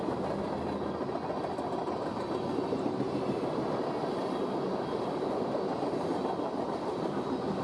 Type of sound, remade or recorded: recorded